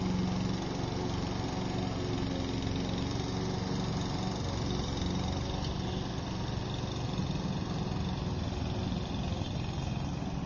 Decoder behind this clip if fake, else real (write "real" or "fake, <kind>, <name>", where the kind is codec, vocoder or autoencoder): real